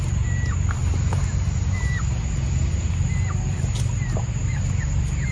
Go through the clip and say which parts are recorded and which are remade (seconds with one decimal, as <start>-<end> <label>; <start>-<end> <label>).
0.0-5.3 recorded